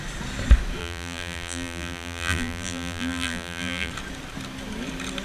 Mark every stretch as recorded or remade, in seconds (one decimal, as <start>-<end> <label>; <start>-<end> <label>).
0.0-0.8 recorded; 0.8-3.9 remade; 3.9-5.2 recorded